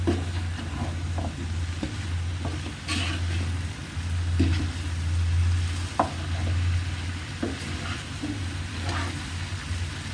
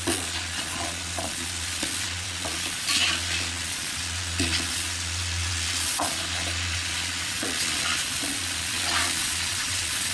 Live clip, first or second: first